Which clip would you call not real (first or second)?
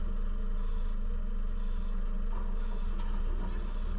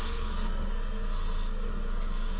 second